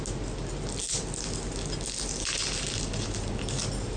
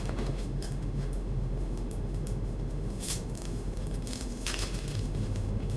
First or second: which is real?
first